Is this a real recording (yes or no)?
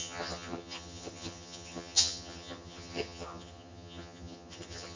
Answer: no